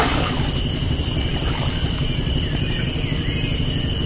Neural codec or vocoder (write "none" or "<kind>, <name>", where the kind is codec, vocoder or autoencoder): none